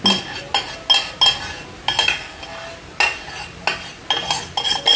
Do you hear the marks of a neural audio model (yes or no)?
no